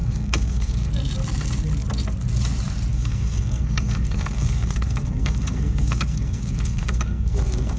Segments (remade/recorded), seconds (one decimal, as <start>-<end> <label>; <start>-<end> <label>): 0.0-0.9 remade; 0.9-2.9 recorded; 2.9-7.8 remade

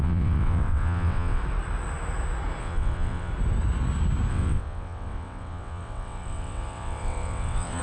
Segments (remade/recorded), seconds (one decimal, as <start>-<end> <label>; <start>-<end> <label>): 0.0-1.4 remade; 1.4-2.6 recorded; 2.6-3.3 remade; 3.3-4.3 recorded; 4.3-7.8 remade

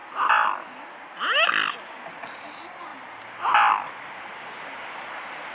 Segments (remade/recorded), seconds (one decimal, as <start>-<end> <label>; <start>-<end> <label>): 0.0-5.5 recorded

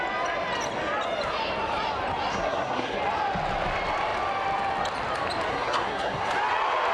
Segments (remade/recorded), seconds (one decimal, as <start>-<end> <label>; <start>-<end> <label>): 0.0-2.3 recorded; 2.3-3.0 remade; 3.0-5.5 recorded; 5.5-6.3 remade; 6.3-6.9 recorded

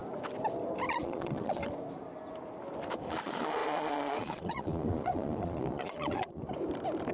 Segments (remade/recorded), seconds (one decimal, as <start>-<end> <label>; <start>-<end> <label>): 0.0-0.9 recorded; 0.9-1.6 remade; 1.6-3.1 recorded; 3.1-6.4 remade; 6.4-7.1 recorded